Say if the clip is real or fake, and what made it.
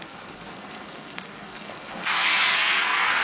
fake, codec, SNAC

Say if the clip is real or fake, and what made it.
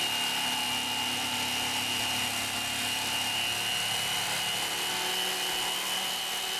real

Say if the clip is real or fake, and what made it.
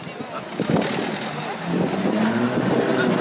real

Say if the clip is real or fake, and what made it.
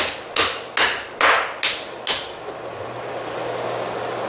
real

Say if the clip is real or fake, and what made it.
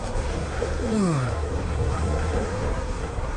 fake, codec, SNAC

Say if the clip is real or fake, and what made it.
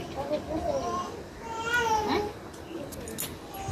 real